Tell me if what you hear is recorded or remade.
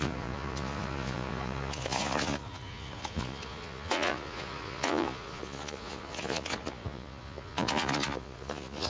remade